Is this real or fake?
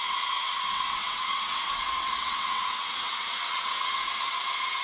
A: fake